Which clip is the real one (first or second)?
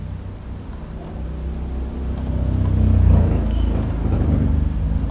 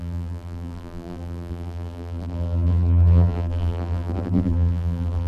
first